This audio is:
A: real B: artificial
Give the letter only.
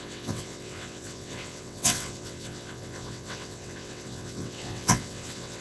B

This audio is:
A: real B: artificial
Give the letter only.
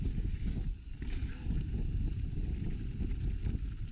A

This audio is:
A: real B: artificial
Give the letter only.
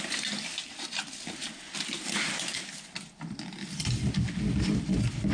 A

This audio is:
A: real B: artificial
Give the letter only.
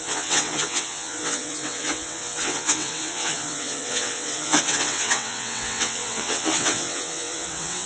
B